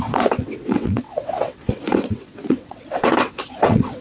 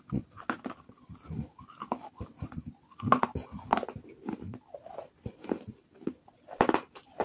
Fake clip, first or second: first